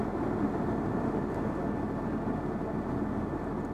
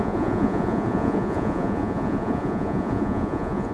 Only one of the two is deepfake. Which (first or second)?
second